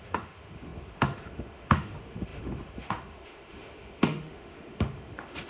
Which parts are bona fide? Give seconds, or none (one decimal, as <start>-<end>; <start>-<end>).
none